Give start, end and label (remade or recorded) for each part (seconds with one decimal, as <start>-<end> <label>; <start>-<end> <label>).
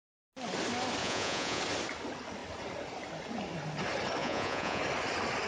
0.0-1.0 recorded; 1.0-1.6 remade; 1.6-4.2 recorded; 4.2-4.8 remade; 4.8-5.5 recorded